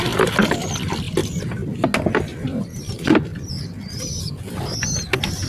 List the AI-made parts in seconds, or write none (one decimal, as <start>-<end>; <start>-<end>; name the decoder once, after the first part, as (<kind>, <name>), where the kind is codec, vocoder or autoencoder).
2.3-4.2 (vocoder, BigVGAN v2)